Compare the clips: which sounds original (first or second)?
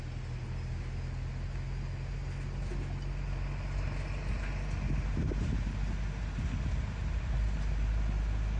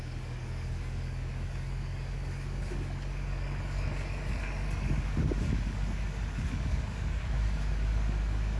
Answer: first